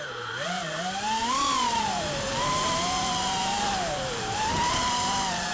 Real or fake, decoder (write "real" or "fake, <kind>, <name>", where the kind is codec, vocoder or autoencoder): fake, vocoder, BigVGAN v2